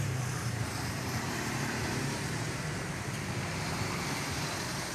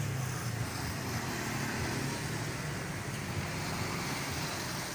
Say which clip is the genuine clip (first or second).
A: second